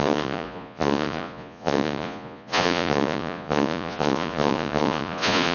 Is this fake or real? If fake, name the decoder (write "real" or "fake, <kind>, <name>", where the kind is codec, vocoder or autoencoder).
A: fake, vocoder, Vocos